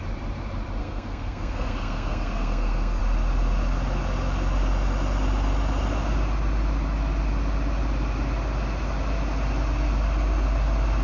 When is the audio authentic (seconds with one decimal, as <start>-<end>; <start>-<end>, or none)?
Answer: 0.0-0.8; 3.0-11.0